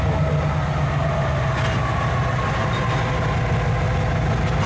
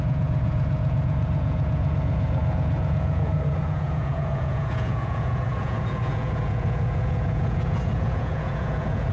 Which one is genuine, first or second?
first